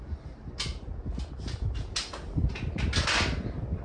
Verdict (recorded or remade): recorded